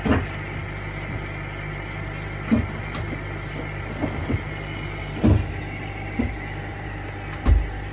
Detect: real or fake real